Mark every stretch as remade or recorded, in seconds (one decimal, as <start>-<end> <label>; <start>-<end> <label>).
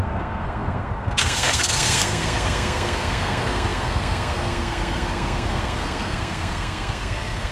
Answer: 0.0-7.5 remade